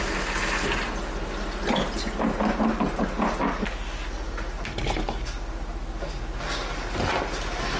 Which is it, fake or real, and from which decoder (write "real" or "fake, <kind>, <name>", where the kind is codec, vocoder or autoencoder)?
real